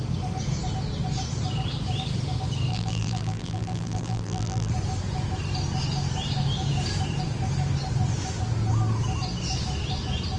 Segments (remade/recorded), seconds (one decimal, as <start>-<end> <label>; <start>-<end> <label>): 0.0-2.7 recorded; 2.7-4.7 remade; 4.7-10.4 recorded